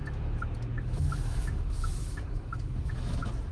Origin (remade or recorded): remade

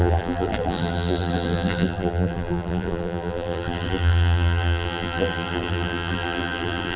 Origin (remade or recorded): remade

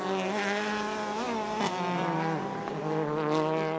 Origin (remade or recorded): recorded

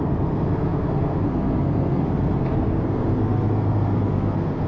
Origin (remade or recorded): remade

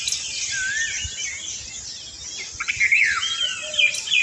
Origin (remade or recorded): recorded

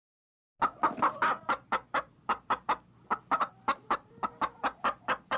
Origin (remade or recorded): recorded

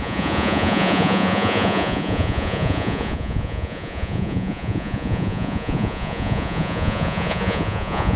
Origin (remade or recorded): remade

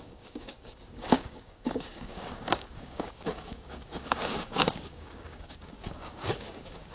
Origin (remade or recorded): remade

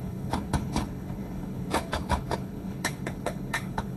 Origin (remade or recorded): remade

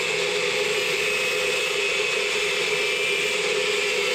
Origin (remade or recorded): recorded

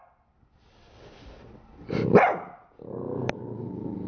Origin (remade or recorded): recorded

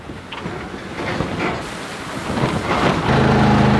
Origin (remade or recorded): recorded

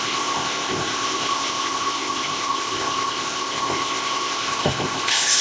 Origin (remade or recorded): remade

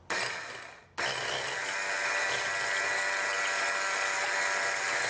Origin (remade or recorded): recorded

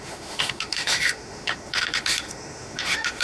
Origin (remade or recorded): remade